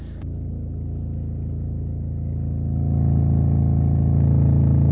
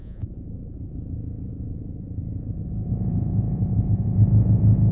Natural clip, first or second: first